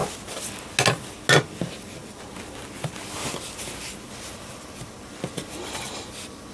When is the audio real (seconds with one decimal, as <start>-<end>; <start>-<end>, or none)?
0.0-6.5